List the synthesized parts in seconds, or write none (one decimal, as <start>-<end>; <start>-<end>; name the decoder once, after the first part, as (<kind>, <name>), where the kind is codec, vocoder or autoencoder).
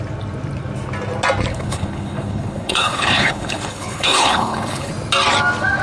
1.5-4.9 (codec, HILCodec)